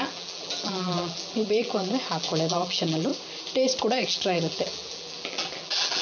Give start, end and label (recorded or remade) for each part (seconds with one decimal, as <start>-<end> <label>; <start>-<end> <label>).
0.0-3.1 remade; 3.1-3.8 recorded; 3.8-6.0 remade